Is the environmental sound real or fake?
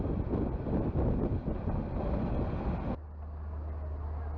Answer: real